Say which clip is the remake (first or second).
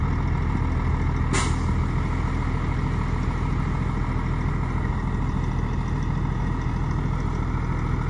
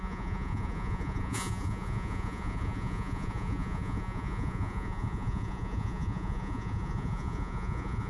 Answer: second